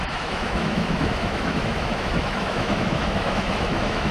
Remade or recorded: remade